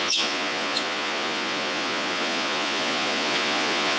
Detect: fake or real fake